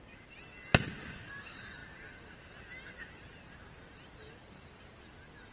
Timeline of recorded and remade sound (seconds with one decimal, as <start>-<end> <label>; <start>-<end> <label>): 0.0-4.4 recorded; 4.4-5.0 remade; 5.0-5.5 recorded